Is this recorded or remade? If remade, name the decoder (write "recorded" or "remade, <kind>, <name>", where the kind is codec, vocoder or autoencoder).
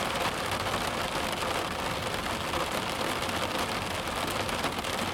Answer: recorded